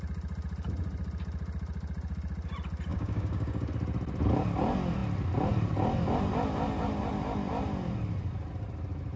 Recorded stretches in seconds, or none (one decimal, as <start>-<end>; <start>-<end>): 0.0-2.9; 3.7-9.2